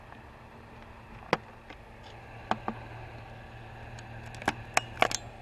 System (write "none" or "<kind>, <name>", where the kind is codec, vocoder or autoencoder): none